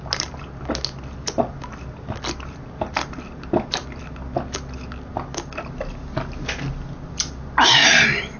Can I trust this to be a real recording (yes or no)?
yes